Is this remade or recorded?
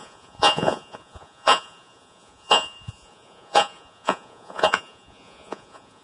remade